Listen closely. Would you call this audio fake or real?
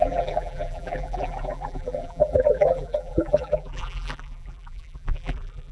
fake